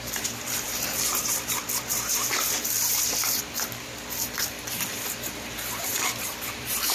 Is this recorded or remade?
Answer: remade